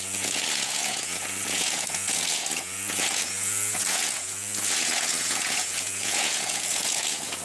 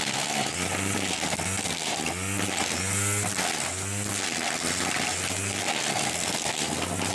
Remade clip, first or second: first